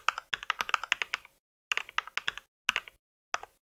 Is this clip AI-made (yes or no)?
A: no